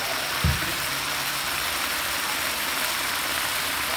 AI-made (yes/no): yes